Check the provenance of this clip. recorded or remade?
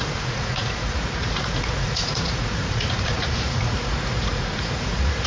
remade